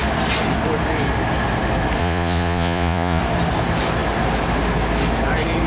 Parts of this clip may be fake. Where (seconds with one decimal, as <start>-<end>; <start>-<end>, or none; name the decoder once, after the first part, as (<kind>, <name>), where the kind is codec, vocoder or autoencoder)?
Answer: 2.0-3.2 (vocoder, Vocos)